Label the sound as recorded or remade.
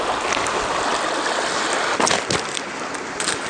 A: recorded